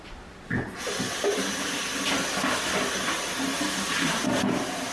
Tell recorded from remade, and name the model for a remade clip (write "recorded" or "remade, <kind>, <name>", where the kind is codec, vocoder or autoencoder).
recorded